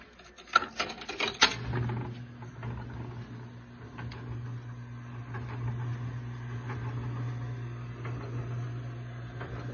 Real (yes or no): yes